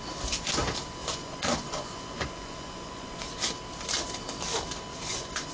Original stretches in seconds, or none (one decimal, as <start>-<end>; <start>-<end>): 0.0-1.0; 3.3-4.9